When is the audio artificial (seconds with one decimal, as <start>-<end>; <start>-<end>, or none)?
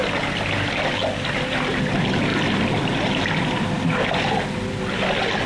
none